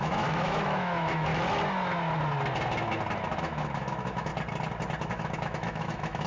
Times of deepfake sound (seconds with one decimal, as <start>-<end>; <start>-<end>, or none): 0.0-1.3; 3.4-4.3; 5.1-6.3